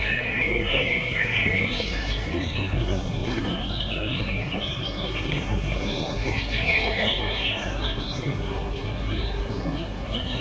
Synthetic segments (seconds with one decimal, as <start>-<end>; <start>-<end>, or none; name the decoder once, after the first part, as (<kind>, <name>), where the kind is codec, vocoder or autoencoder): 0.0-10.4 (codec, SNAC)

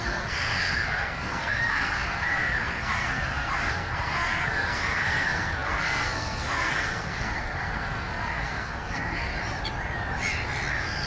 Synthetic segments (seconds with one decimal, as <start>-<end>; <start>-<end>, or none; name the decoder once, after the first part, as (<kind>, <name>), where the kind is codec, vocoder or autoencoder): 0.0-9.3 (codec, SNAC); 10.7-11.1